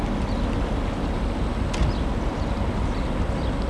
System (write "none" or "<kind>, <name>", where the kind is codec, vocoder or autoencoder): none